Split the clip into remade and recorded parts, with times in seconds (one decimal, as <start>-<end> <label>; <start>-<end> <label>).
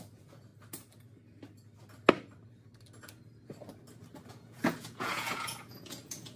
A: 0.0-0.5 remade; 0.5-4.3 recorded; 4.3-6.4 remade